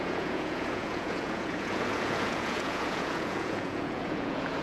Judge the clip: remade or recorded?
remade